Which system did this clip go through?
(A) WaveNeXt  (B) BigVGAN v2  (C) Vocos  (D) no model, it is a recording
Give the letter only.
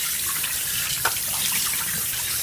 B